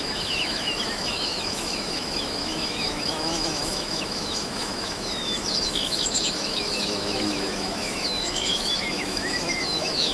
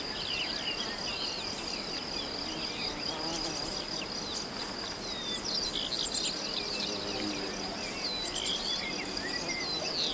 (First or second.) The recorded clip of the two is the second